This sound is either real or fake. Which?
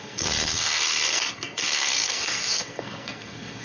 fake